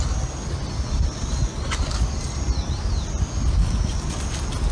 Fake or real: real